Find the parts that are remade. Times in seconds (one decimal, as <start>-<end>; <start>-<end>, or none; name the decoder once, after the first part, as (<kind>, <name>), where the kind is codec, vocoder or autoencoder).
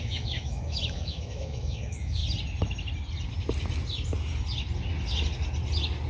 0.0-2.2 (autoencoder, DAC-VAE)